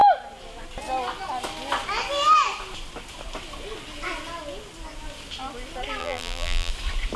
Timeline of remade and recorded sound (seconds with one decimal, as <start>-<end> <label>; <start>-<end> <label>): 0.0-6.0 recorded; 6.0-6.7 remade; 6.7-7.2 recorded